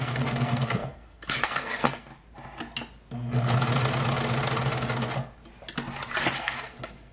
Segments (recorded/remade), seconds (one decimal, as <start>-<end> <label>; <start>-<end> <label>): 0.0-2.1 remade; 2.1-6.4 recorded; 6.4-7.1 remade